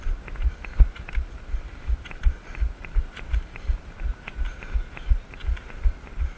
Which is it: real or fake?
real